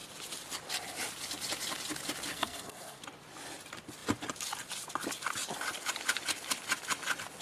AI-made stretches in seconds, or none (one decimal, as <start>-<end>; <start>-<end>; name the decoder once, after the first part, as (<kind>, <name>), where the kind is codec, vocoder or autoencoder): 2.3-3.0 (codec, SNAC)